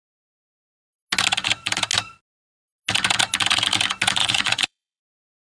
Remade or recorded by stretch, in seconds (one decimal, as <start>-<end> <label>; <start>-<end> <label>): 0.0-4.2 recorded; 4.2-5.0 remade; 5.0-5.4 recorded